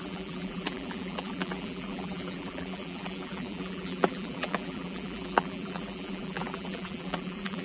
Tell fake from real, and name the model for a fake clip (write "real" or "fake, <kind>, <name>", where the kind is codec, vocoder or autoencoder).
fake, vocoder, BigVGAN v2